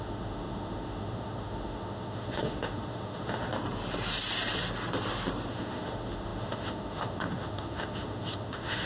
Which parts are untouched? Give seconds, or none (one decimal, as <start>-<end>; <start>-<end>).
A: 3.5-5.5